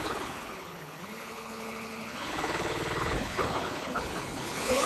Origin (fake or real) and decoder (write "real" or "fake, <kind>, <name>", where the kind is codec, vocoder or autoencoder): fake, codec, HILCodec